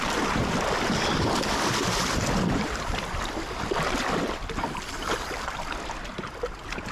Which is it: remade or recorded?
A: remade